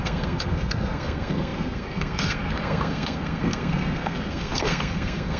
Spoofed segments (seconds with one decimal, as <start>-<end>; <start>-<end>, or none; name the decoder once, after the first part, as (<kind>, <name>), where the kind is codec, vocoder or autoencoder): 0.0-5.4 (codec, SNAC)